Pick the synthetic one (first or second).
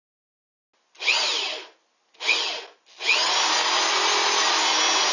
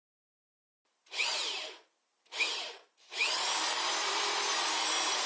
second